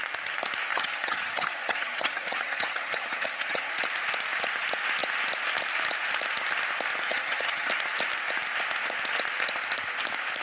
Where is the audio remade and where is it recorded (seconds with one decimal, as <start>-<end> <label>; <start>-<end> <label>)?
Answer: 0.0-0.7 recorded; 0.7-3.7 remade; 3.7-7.1 recorded; 7.1-7.7 remade; 7.7-10.4 recorded